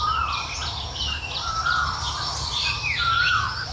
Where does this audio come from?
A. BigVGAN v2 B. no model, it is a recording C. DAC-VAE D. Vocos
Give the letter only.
B